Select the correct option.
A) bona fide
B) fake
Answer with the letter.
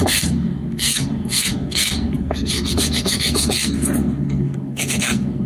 B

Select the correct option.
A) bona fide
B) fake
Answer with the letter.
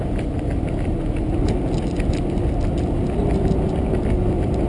A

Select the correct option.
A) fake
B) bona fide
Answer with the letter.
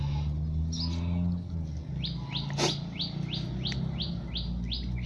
B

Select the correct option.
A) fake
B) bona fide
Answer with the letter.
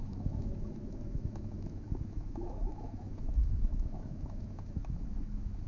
A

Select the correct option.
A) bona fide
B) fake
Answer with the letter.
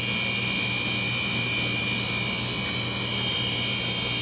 A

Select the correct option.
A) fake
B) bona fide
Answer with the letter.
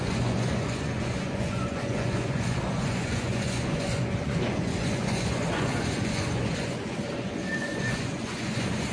A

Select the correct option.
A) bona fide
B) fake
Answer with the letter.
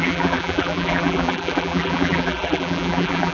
B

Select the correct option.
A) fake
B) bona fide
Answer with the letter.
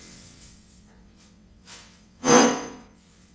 A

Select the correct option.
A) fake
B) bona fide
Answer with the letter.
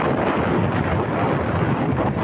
A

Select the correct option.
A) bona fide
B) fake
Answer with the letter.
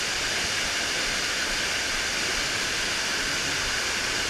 A